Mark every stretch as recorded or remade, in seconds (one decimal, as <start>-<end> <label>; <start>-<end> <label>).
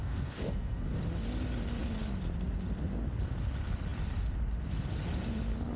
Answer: 0.0-1.0 remade; 1.0-5.8 recorded